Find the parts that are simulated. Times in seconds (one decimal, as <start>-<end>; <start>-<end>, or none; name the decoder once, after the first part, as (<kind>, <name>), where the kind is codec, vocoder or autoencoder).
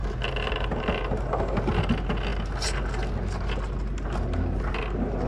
none